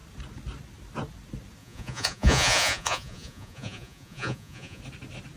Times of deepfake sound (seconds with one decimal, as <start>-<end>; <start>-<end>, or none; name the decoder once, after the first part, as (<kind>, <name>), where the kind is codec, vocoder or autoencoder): 1.6-4.8 (vocoder, Vocos)